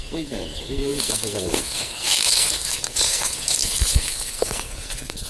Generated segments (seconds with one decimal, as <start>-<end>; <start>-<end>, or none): 0.0-5.3